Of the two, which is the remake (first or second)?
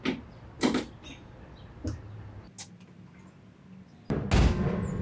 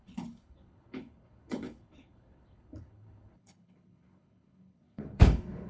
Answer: second